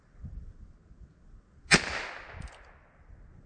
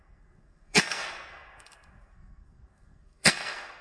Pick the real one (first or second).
first